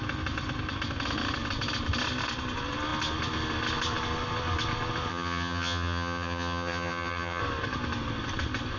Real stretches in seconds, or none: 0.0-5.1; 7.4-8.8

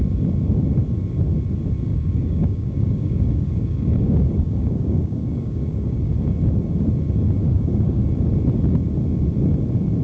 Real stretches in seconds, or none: 0.0-1.9; 6.1-7.4; 8.0-10.0

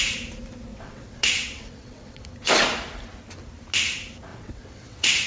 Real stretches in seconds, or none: 0.0-0.7; 2.2-4.3

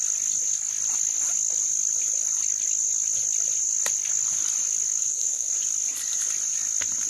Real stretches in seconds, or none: 0.0-5.0; 5.5-7.1

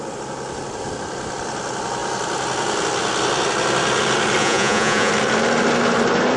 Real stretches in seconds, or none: 0.0-4.4; 5.1-6.4